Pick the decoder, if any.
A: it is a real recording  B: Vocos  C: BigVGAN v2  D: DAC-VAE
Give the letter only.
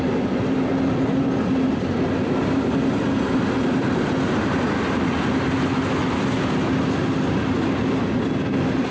A